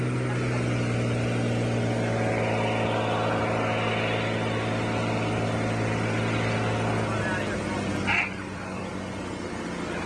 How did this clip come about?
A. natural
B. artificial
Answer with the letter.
A